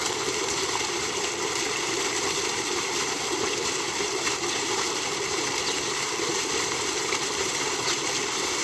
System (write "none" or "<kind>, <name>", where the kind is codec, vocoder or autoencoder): vocoder, BigVGAN v2